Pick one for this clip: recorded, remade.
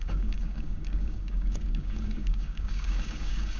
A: remade